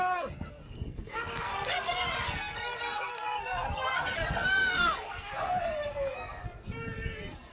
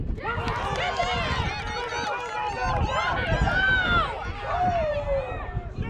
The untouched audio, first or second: second